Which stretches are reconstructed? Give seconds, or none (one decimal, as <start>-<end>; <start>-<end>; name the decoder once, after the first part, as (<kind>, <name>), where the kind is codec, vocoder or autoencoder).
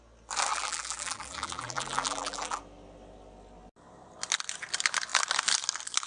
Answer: 0.5-2.6 (vocoder, BigVGAN v2)